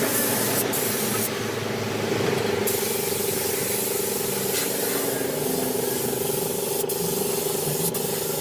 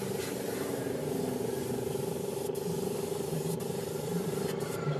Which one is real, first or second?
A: first